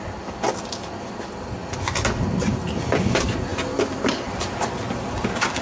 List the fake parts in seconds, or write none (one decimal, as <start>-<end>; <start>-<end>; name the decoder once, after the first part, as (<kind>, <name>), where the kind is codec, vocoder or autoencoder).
none